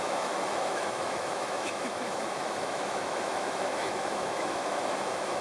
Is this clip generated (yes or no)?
yes